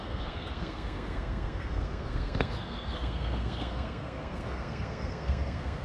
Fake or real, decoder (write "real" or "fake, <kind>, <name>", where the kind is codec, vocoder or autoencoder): fake, codec, SNAC